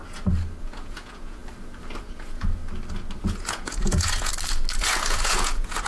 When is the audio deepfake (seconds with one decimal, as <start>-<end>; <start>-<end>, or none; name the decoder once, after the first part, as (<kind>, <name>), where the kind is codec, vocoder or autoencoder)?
0.6-1.4 (vocoder, Vocos); 2.0-2.6; 3.2-4.3; 4.8-5.9